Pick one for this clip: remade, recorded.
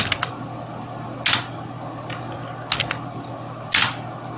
recorded